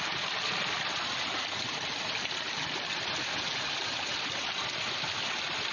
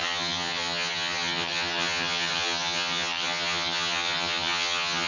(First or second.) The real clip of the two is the first